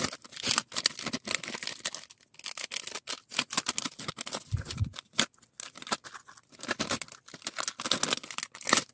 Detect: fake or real real